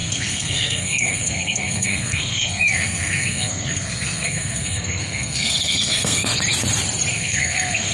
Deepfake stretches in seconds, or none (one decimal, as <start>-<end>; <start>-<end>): 0.0-6.3; 7.1-7.9